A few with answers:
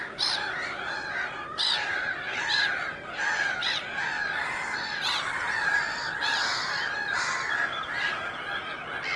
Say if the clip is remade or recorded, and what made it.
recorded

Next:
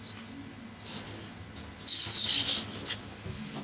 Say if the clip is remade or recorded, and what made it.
recorded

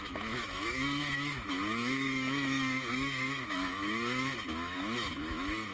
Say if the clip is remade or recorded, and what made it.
remade, autoencoder, DAC-VAE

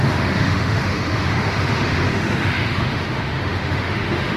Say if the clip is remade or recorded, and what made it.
remade, autoencoder, DAC-VAE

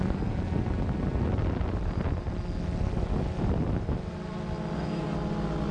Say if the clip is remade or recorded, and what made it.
recorded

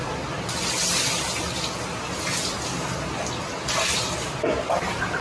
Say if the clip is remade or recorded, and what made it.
recorded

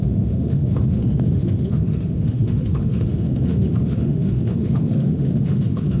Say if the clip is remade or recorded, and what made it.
remade, autoencoder, DAC-VAE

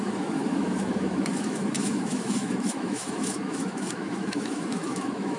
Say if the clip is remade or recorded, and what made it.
remade, autoencoder, DAC-VAE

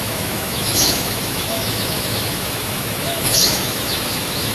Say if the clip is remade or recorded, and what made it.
remade, autoencoder, DAC-VAE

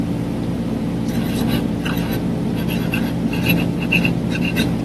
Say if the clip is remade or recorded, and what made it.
recorded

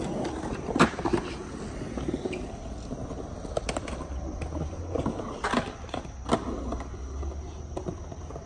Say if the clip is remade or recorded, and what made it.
recorded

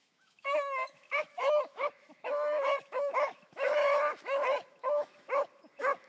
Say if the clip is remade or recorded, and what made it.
remade, autoencoder, DAC-VAE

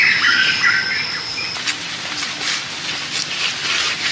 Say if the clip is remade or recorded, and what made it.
recorded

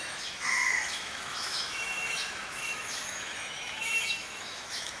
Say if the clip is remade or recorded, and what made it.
remade, autoencoder, DAC-VAE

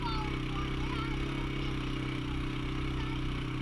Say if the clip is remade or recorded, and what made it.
recorded